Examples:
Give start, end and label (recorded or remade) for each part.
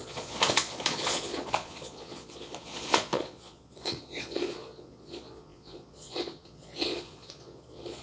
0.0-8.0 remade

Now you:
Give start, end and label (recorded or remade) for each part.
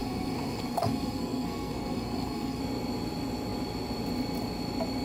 0.0-2.6 remade; 2.6-5.0 recorded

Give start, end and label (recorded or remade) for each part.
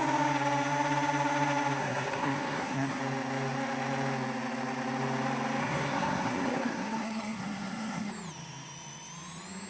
0.0-1.8 recorded; 1.8-3.0 remade; 3.0-5.6 recorded; 5.6-8.1 remade; 8.1-9.7 recorded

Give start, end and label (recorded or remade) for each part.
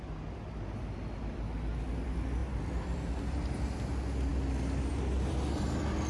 0.0-6.1 recorded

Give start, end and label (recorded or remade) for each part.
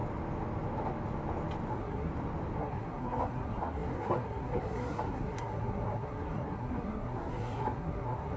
0.0-1.7 recorded; 1.7-2.1 remade; 2.1-2.6 recorded; 2.6-8.4 remade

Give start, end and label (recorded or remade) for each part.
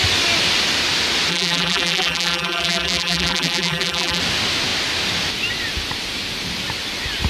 0.0-1.3 recorded; 1.3-4.2 remade; 4.2-7.3 recorded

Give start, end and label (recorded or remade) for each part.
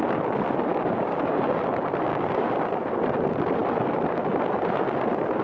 0.0-0.7 recorded; 0.7-1.6 remade; 1.6-2.1 recorded; 2.1-2.6 remade; 2.6-5.4 recorded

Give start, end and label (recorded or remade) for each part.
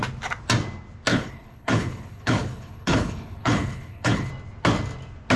0.0-1.1 recorded; 1.1-4.3 remade; 4.3-5.4 recorded